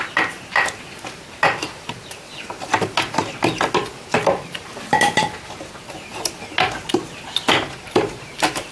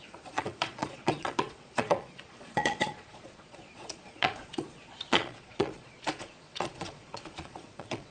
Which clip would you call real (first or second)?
first